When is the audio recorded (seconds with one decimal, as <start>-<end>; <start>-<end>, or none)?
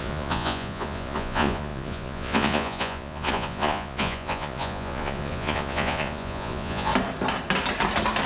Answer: 6.9-8.3